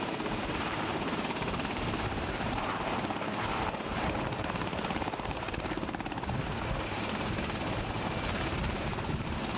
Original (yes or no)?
no